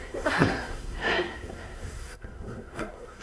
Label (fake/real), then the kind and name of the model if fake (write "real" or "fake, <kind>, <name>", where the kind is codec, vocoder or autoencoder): fake, codec, SNAC